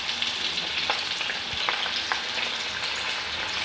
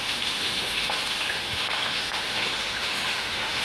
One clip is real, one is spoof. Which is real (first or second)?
first